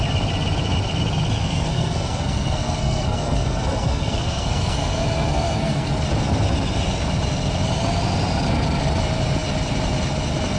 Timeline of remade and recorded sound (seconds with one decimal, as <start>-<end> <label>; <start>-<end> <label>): 0.0-1.4 recorded; 1.4-5.9 remade; 5.9-10.6 recorded